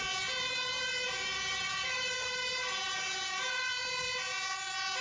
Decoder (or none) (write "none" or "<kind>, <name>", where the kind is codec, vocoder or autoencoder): none